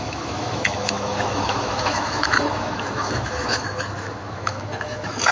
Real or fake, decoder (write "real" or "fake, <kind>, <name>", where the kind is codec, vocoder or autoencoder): fake, autoencoder, DAC-VAE